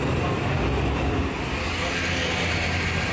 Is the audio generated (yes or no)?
no